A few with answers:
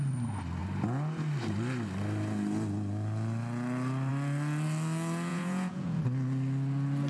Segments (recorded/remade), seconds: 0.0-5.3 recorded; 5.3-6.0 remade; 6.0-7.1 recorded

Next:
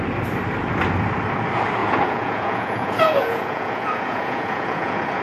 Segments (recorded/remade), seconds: 0.0-1.8 recorded; 1.8-5.2 remade